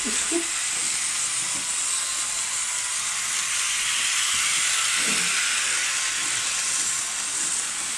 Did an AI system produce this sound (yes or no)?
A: no